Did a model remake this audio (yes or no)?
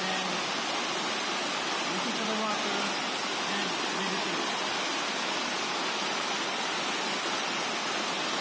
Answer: no